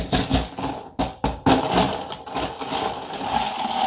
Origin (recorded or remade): recorded